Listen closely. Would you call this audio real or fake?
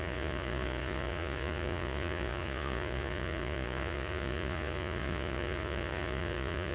fake